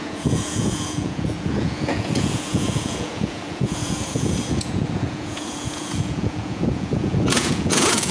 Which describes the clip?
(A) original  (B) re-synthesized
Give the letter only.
B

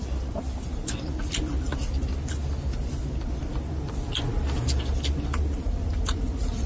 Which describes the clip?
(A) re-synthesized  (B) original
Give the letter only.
B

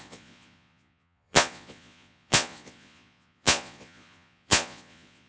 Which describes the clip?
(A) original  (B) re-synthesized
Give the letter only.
B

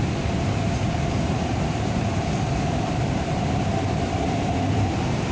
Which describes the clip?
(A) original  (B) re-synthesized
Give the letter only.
B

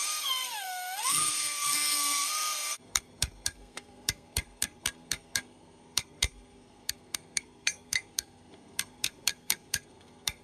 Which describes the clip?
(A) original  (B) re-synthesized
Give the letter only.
B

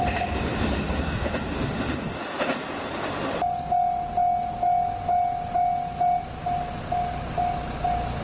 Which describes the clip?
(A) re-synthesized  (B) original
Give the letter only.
B